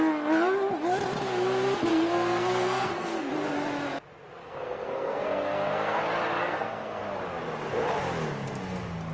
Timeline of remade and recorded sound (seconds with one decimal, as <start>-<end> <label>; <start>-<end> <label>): 0.0-1.9 recorded; 1.9-3.3 remade; 3.3-4.4 recorded; 4.4-6.0 remade; 6.0-6.4 recorded; 6.4-7.0 remade; 7.0-9.1 recorded